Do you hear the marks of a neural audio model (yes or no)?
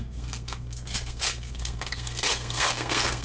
yes